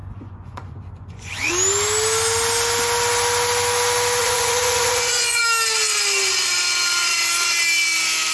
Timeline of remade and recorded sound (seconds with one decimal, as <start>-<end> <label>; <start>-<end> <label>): 0.0-1.5 remade; 1.5-4.2 recorded; 4.2-5.4 remade; 5.4-8.3 recorded